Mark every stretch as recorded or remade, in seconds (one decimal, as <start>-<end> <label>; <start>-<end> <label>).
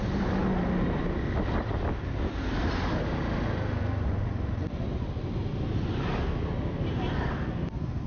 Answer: 0.0-8.1 recorded